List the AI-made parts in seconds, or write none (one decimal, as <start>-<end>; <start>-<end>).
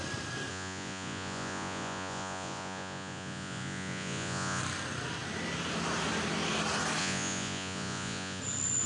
0.5-4.6; 7.0-8.4